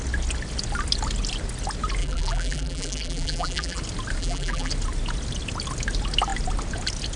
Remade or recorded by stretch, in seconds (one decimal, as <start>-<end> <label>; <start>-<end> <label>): 0.0-2.0 recorded; 2.0-3.8 remade; 3.8-4.2 recorded; 4.2-4.7 remade; 4.7-7.2 recorded